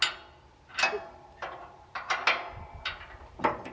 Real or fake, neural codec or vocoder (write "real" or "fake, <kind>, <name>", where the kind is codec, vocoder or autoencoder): real